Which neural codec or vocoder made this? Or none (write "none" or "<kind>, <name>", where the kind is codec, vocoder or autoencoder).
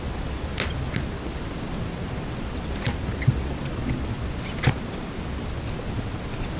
none